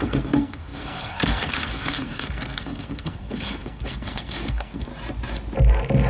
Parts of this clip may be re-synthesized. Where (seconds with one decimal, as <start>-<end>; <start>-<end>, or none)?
0.0-4.9